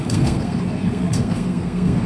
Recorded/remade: remade